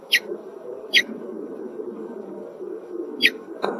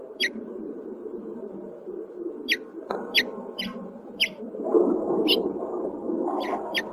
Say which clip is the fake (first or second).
first